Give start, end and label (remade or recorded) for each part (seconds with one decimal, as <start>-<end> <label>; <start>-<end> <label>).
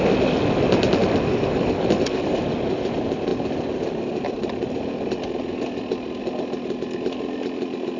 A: 0.0-8.0 recorded